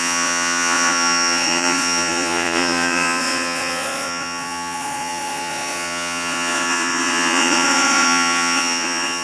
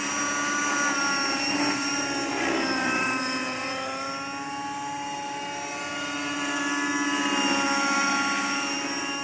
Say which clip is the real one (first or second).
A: second